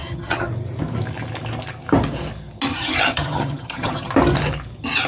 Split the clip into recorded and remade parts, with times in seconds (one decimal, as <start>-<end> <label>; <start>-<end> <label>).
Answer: 0.0-0.5 remade; 0.5-2.7 recorded; 2.7-4.1 remade; 4.1-5.1 recorded